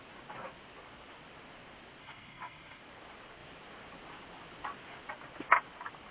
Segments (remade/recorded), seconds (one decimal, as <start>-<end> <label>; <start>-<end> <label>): 0.0-2.0 recorded; 2.0-2.8 remade; 2.8-6.1 recorded